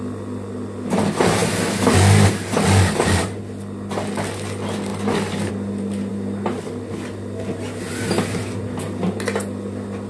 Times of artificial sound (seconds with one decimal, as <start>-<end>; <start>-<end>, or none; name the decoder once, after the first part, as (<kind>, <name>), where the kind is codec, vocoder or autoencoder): none